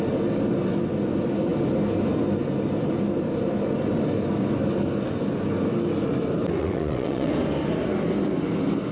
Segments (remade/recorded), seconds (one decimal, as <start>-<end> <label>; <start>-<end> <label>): 0.0-6.6 recorded; 6.6-7.3 remade; 7.3-8.9 recorded